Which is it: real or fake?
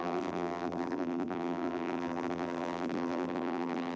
fake